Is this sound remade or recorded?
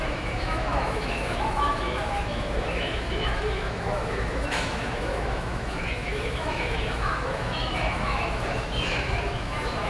remade